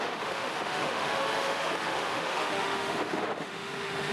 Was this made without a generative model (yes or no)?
no